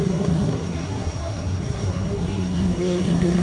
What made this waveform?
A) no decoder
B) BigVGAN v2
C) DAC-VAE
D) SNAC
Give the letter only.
D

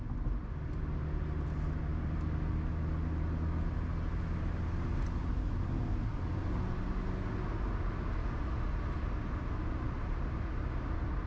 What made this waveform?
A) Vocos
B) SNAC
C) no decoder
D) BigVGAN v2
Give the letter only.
C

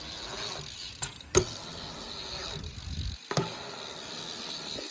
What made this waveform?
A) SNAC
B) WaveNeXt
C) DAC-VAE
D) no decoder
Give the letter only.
D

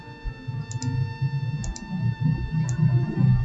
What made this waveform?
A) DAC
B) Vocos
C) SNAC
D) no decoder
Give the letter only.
D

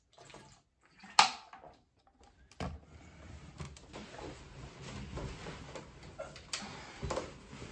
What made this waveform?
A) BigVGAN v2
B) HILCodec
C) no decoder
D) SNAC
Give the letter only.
C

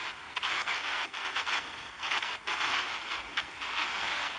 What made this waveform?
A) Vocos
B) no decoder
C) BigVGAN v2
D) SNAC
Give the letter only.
D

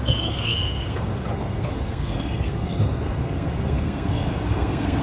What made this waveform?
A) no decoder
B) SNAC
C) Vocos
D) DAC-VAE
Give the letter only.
B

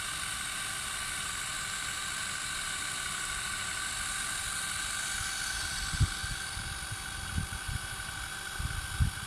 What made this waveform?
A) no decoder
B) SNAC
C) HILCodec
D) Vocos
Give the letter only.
A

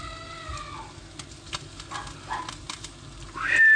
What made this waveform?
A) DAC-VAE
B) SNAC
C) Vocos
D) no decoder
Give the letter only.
D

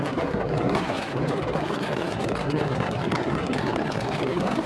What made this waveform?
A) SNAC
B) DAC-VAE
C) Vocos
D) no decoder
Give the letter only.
A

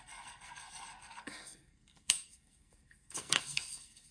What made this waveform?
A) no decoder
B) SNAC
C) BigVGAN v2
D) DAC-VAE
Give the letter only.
B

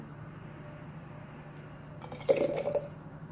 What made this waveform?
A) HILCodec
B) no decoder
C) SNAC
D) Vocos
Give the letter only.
B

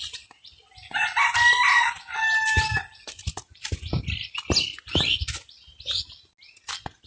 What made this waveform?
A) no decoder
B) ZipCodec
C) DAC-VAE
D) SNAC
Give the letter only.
A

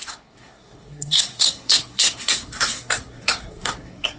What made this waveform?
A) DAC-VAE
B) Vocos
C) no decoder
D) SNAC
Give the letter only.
D